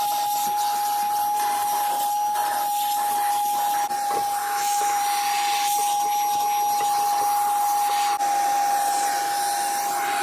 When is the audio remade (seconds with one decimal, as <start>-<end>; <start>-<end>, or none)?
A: 4.4-5.0